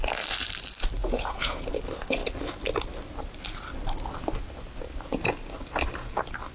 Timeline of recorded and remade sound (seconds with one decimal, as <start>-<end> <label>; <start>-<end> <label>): 0.0-1.0 recorded; 1.0-1.7 remade; 1.7-6.5 recorded